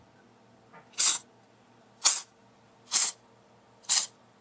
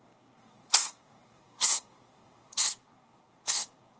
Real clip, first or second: first